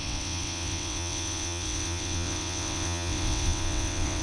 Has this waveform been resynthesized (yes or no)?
yes